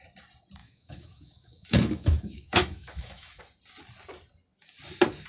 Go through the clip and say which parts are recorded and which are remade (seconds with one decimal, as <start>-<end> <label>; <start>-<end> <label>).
0.0-0.6 recorded; 0.6-3.4 remade; 3.4-5.3 recorded